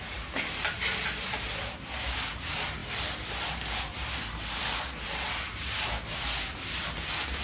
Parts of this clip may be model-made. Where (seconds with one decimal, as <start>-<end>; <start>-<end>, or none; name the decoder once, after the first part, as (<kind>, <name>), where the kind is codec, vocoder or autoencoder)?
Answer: none